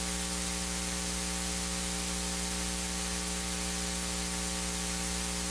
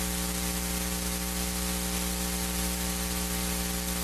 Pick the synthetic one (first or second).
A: second